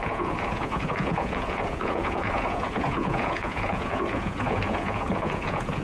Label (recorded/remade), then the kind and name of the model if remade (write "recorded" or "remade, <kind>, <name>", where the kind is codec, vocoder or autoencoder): remade, vocoder, Vocos